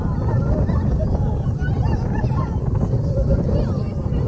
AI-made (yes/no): yes